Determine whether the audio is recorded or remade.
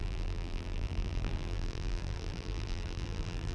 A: remade